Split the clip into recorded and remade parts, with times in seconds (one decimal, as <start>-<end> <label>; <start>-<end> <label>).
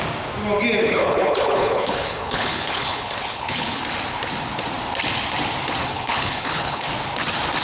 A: 0.0-0.8 recorded; 0.8-3.8 remade; 3.8-5.8 recorded; 5.8-6.9 remade; 6.9-7.6 recorded